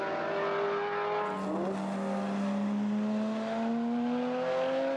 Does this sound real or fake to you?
real